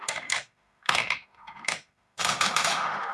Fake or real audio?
fake